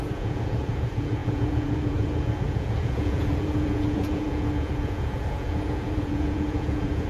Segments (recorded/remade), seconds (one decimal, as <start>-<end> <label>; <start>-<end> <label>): 0.0-7.1 remade

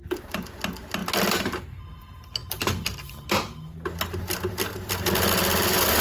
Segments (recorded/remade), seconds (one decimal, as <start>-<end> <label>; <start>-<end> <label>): 0.0-2.4 recorded; 2.4-3.1 remade; 3.1-6.0 recorded

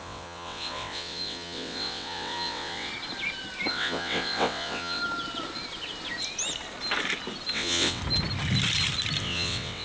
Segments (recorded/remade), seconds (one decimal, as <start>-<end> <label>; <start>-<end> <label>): 0.0-2.9 remade; 2.9-3.7 recorded; 3.7-5.0 remade; 5.0-7.5 recorded; 7.5-8.0 remade; 8.0-9.2 recorded; 9.2-9.8 remade

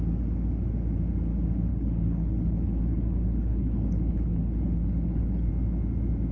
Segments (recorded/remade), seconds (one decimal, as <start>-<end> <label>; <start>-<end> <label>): 0.0-1.7 recorded; 1.7-5.5 remade; 5.5-6.3 recorded

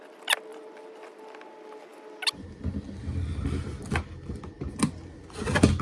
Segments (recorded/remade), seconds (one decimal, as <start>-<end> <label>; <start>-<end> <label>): 0.0-0.5 recorded; 0.5-1.2 remade; 1.2-5.8 recorded